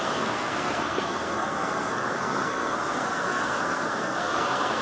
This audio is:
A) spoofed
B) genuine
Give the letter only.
A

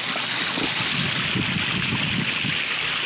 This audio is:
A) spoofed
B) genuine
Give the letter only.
B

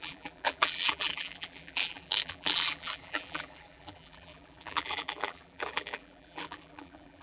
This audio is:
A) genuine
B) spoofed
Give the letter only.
B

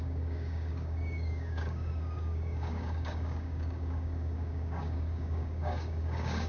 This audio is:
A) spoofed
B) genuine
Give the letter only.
A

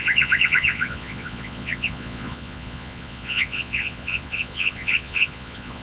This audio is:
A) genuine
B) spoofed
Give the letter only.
B